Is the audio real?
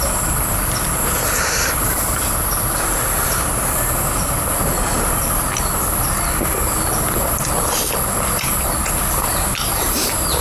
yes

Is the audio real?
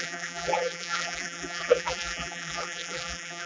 no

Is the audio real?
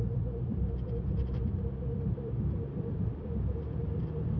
no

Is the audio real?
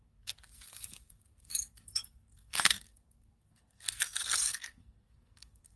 no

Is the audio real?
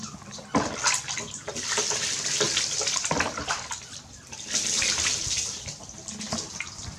yes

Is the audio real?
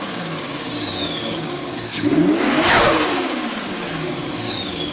no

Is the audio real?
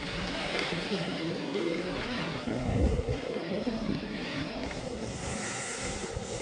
no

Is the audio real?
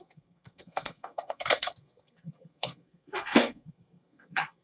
no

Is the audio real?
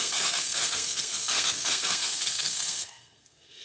no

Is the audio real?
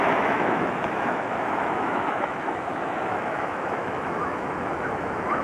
no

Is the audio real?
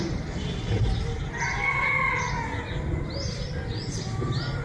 yes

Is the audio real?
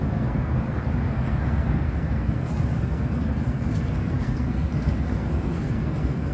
no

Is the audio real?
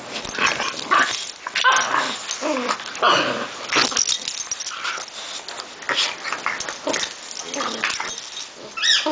yes